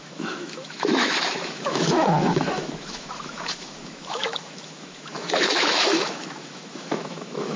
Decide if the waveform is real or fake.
fake